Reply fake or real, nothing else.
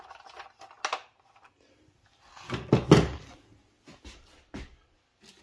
real